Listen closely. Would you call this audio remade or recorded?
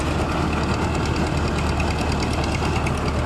recorded